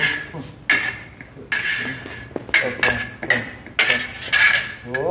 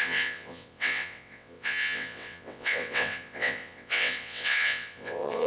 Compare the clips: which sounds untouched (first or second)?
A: first